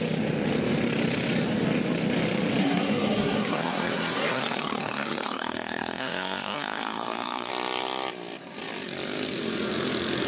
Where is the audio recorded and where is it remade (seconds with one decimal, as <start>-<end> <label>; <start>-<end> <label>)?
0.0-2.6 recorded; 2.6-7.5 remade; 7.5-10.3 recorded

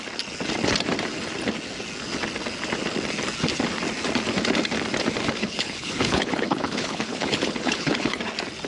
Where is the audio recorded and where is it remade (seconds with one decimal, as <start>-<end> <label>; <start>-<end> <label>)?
0.0-5.4 recorded; 5.4-8.2 remade; 8.2-8.7 recorded

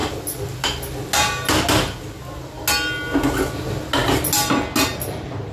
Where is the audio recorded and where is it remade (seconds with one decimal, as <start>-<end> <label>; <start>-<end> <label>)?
0.0-5.5 recorded